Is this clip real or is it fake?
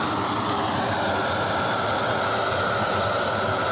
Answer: real